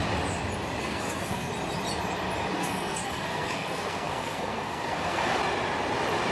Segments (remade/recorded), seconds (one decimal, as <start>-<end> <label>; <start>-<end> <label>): 0.0-0.8 recorded; 0.8-1.5 remade; 1.5-2.6 recorded; 2.6-5.4 remade; 5.4-6.3 recorded